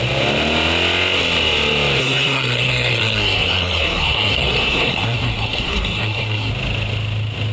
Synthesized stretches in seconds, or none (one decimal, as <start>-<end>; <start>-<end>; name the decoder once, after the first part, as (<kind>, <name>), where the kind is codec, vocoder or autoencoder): 2.0-6.5 (codec, SNAC)